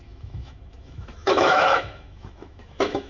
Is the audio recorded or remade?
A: remade